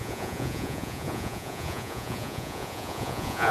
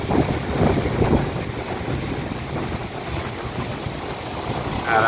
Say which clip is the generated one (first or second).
first